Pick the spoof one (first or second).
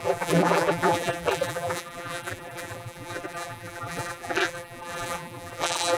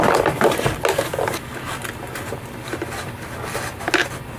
first